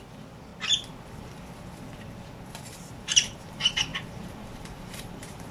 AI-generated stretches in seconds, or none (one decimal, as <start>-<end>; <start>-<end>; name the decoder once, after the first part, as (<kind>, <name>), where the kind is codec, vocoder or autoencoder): 0.0-0.5 (vocoder, BigVGAN v2); 2.9-5.5